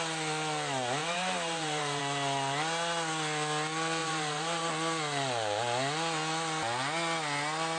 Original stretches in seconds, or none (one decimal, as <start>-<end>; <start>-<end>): 0.0-1.0; 2.0-4.0; 4.7-7.8